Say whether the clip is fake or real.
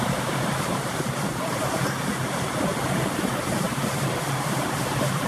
fake